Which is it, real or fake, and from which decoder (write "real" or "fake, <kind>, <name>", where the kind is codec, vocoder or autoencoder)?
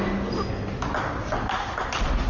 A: real